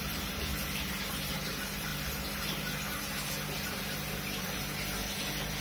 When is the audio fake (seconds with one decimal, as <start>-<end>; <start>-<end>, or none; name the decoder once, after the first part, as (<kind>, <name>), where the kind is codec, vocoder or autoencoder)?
0.0-0.5 (vocoder, BigVGAN v2); 1.1-1.9